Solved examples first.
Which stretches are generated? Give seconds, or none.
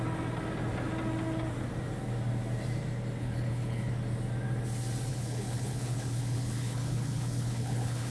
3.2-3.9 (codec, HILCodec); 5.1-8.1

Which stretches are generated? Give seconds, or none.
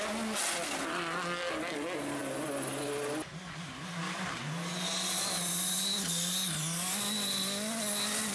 none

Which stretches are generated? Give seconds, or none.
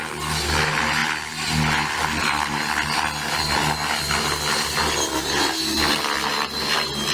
none